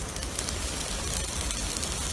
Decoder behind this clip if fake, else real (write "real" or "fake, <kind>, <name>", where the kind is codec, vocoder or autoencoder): real